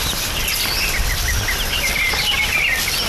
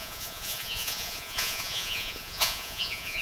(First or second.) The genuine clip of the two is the first